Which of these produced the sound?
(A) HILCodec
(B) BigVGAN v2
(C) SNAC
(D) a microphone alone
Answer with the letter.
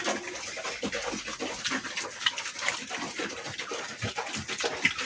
D